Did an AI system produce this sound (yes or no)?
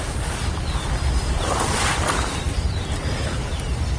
no